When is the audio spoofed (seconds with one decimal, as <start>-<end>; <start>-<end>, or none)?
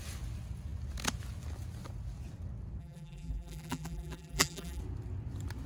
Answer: 2.8-4.8